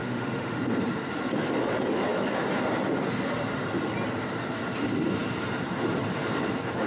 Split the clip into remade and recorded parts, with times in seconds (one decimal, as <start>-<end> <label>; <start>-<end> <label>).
0.0-0.6 remade; 0.6-6.9 recorded